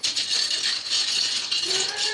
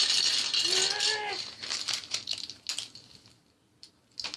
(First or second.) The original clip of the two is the second